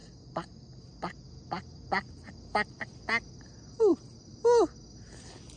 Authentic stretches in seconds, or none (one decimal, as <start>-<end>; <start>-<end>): 0.0-5.6